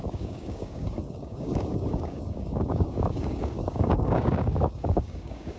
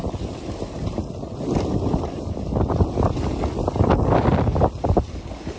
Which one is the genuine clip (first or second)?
second